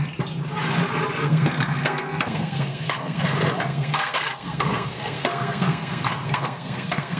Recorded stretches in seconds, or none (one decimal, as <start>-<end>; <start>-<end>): 0.0-1.2; 3.2-3.7